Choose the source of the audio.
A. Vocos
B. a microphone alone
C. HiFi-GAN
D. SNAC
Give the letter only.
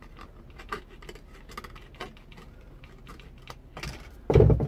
B